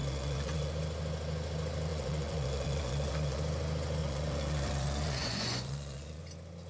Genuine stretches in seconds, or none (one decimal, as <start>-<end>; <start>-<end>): 0.7-1.9; 3.4-4.0; 6.2-6.7